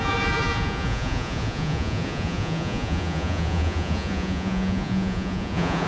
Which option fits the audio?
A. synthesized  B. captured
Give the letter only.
A